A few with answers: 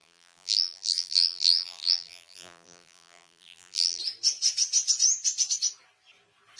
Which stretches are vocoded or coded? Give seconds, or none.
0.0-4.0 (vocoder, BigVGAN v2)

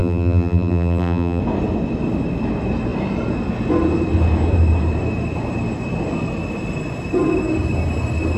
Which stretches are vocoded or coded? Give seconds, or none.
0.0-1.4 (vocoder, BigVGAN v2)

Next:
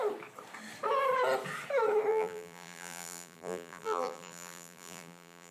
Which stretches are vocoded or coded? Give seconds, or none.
2.1-5.5 (vocoder, BigVGAN v2)

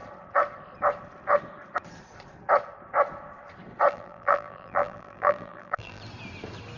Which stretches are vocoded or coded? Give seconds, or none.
3.9-6.0 (vocoder, BigVGAN v2)